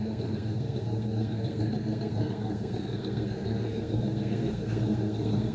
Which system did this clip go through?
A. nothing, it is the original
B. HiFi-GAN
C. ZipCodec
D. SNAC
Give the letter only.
D